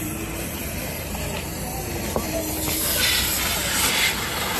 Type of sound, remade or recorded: recorded